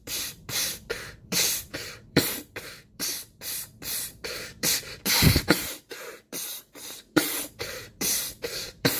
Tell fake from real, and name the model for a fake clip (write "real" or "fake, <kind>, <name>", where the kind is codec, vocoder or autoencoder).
fake, vocoder, BigVGAN v2